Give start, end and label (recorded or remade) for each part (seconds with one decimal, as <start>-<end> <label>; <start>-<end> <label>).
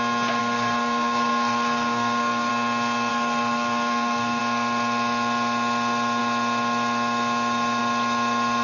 0.0-0.4 recorded; 0.4-2.5 remade; 2.5-3.1 recorded; 3.1-4.4 remade; 4.4-8.6 recorded